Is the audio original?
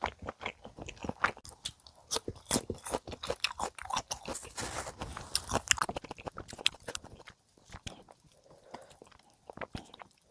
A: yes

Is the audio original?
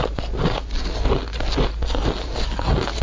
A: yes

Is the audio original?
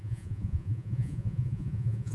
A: no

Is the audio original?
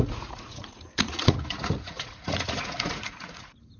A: no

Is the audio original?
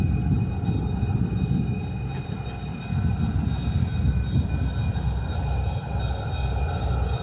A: yes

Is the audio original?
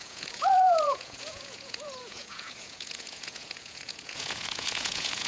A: no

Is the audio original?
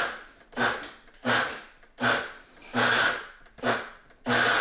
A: yes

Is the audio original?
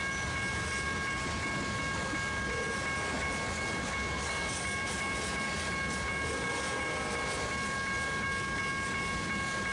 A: yes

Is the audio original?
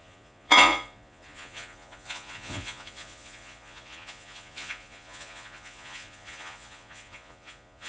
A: no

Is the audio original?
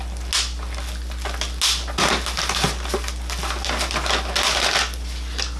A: yes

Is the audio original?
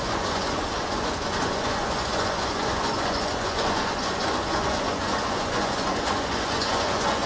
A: no